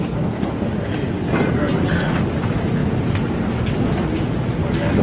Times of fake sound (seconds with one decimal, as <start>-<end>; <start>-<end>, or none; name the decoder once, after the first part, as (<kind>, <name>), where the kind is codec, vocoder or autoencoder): none